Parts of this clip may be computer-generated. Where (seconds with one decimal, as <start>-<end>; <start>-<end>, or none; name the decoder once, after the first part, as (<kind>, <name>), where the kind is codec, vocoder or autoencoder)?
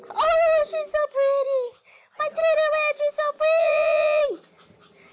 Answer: 3.6-4.2 (vocoder, Vocos)